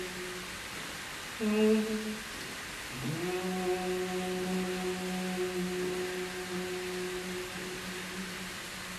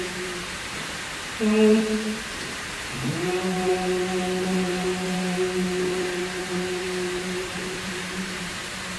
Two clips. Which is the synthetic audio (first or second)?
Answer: second